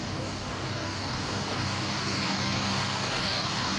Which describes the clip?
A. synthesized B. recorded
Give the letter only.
A